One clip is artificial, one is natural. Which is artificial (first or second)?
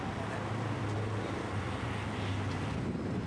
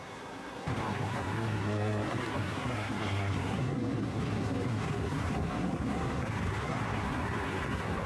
second